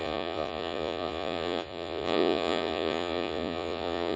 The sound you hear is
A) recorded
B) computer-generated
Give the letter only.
B